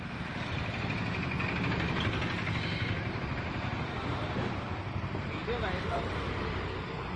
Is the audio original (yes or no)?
yes